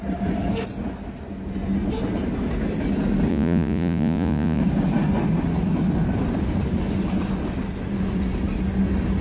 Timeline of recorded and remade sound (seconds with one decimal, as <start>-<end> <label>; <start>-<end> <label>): 0.0-3.3 recorded; 3.3-4.6 remade; 4.6-9.2 recorded